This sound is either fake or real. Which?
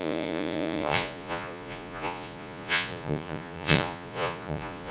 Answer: fake